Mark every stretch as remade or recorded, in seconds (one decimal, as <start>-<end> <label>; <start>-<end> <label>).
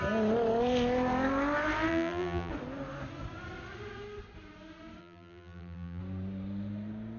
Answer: 0.0-1.9 recorded; 1.9-2.5 remade; 2.5-5.0 recorded; 5.0-6.0 remade; 6.0-7.2 recorded